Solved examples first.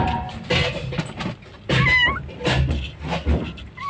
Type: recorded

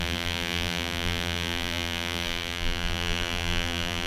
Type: remade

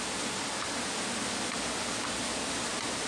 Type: recorded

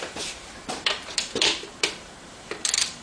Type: remade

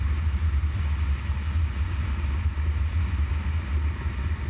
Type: recorded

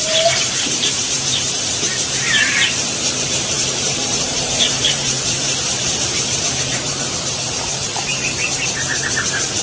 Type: remade